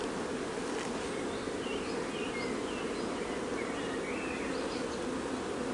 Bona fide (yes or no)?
yes